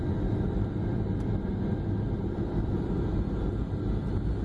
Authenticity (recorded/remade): recorded